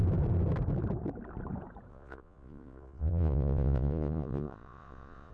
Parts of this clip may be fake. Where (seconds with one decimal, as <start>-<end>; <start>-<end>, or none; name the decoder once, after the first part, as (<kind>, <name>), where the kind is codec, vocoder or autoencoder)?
1.9-5.3 (vocoder, Vocos)